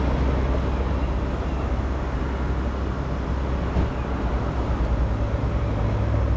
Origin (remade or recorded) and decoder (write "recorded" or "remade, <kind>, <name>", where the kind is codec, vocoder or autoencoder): recorded